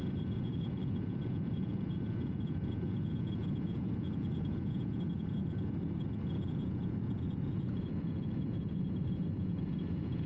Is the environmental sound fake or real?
fake